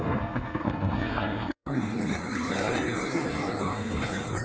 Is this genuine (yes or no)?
no